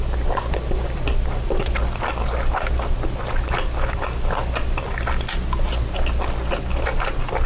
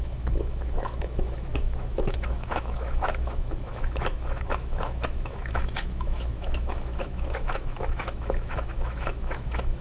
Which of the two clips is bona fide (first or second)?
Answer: first